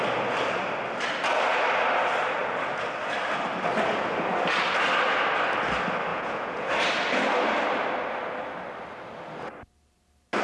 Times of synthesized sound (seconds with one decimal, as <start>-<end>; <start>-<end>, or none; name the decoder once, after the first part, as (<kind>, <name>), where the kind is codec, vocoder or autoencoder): 6.1-6.7 (vocoder, Vocos)